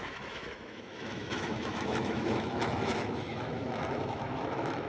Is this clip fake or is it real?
fake